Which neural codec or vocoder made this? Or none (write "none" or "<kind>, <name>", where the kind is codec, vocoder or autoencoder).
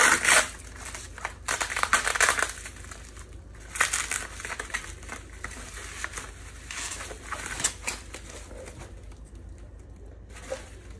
none